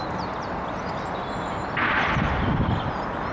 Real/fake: real